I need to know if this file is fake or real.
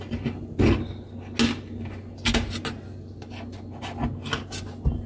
real